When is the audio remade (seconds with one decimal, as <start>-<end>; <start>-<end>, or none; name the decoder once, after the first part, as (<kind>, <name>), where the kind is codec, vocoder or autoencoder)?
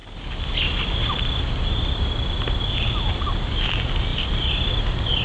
none